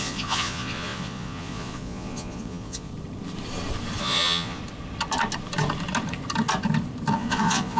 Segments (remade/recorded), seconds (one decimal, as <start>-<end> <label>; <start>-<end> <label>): 0.0-2.9 remade; 2.9-4.0 recorded; 4.0-4.6 remade; 4.6-7.1 recorded; 7.1-7.8 remade